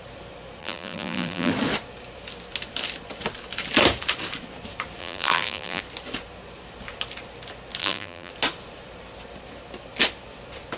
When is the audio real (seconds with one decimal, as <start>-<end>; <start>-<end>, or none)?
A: 0.0-0.6; 1.5-5.0; 5.8-7.8; 8.3-10.8